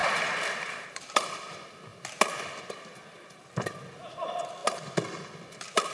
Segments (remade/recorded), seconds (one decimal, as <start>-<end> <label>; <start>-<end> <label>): 0.0-1.9 remade; 1.9-2.6 recorded; 2.6-4.6 remade; 4.6-5.5 recorded; 5.5-5.9 remade

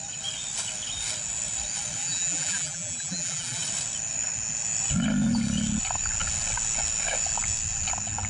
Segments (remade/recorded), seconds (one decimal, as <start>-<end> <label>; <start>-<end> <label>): 0.0-2.0 recorded; 2.0-3.6 remade; 3.6-8.3 recorded

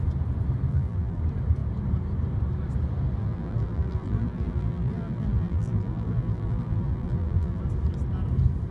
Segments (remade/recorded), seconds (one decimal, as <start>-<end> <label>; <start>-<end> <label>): 0.0-0.7 recorded; 0.7-1.2 remade; 1.2-3.2 recorded; 3.2-7.6 remade; 7.6-8.7 recorded